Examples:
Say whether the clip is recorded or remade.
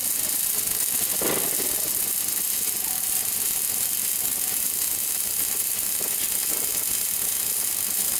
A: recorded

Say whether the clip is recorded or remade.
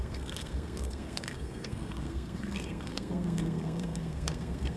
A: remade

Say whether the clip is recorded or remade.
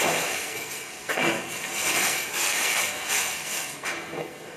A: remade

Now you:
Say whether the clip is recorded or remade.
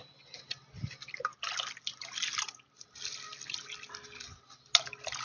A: recorded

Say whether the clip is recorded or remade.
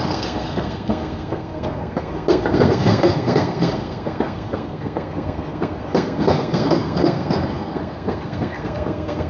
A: remade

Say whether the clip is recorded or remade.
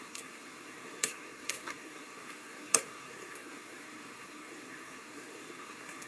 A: remade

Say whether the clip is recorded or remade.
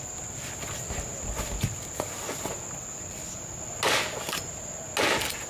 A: recorded